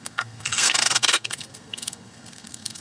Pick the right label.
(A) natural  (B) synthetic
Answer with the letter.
B